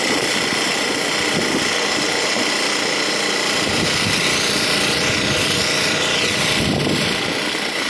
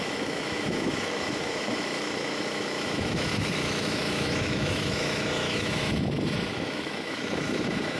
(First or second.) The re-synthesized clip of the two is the second